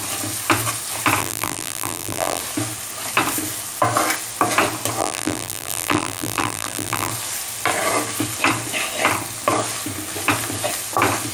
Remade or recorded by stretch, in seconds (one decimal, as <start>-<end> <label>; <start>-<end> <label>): 0.0-1.2 recorded; 1.2-2.4 remade; 2.4-5.0 recorded; 5.0-7.1 remade; 7.1-11.3 recorded